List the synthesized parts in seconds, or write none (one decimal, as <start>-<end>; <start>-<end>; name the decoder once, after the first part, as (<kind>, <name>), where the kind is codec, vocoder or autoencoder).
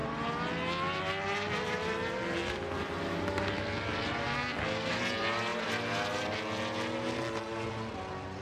4.2-4.9 (codec, SNAC)